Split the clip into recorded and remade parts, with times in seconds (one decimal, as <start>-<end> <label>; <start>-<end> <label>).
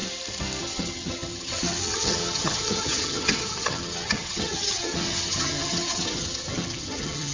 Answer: 0.0-0.6 recorded; 0.6-7.3 remade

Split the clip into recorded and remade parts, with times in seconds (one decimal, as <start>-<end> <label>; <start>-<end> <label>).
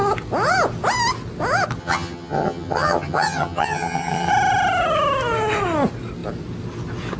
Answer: 0.0-1.8 recorded; 1.8-4.3 remade; 4.3-7.2 recorded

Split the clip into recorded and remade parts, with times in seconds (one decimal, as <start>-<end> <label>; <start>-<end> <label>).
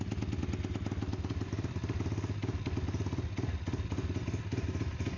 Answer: 0.0-5.2 recorded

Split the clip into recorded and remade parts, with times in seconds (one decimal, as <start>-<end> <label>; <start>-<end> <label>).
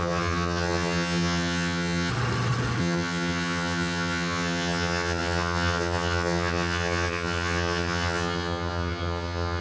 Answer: 0.0-2.1 remade; 2.1-2.8 recorded; 2.8-9.6 remade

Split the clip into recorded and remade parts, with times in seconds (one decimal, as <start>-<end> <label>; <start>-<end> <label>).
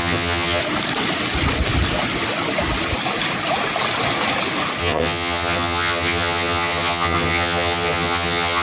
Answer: 0.0-0.6 remade; 0.6-4.8 recorded; 4.8-8.6 remade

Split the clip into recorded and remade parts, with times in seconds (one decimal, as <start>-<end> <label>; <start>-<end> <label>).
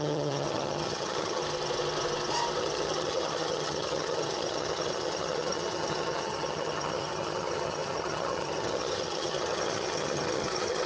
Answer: 0.0-1.4 remade; 1.4-2.6 recorded; 2.6-10.9 remade